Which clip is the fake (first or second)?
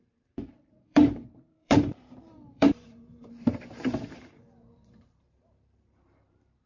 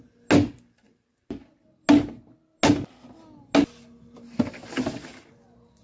first